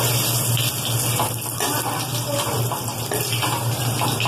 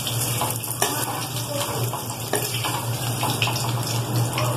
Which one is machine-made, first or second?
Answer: second